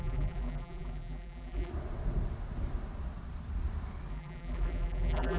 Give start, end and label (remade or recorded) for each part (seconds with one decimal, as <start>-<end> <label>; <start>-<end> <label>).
0.0-1.7 remade; 1.7-4.1 recorded; 4.1-5.4 remade